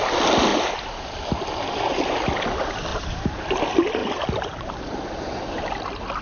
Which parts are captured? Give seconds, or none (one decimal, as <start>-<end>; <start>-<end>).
0.0-0.5; 1.0-2.9; 3.6-4.0; 5.6-6.2